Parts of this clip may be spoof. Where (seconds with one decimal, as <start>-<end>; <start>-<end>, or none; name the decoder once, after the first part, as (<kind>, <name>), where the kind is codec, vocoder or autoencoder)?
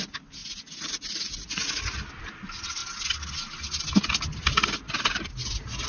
0.4-2.0 (vocoder, Vocos)